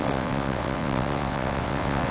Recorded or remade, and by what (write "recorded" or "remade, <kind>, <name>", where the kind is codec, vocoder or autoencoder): remade, vocoder, WaveNeXt